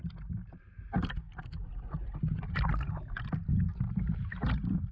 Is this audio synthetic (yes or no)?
no